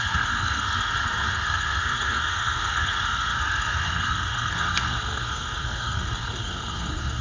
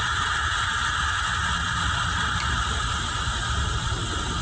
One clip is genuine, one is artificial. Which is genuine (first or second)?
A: second